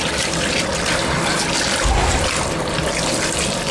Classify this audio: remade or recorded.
recorded